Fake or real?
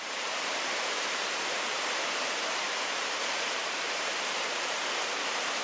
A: fake